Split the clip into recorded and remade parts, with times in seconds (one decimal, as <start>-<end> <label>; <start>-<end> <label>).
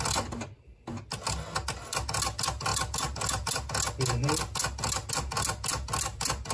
0.0-6.5 recorded